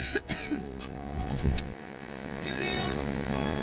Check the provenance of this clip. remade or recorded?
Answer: remade